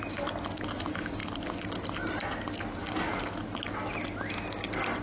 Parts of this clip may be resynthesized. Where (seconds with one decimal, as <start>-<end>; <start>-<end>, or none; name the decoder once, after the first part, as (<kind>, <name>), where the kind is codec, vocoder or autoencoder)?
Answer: none